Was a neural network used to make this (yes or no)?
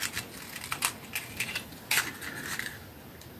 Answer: no